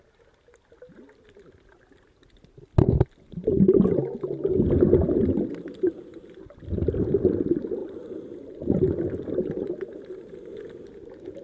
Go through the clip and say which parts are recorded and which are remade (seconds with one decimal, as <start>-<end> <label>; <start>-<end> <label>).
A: 0.0-11.4 recorded